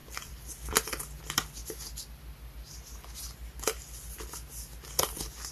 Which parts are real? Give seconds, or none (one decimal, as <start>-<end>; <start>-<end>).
1.2-5.5